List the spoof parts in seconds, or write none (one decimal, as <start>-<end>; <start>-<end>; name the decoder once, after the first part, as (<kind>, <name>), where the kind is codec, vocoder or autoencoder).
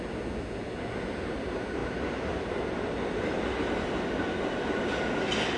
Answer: none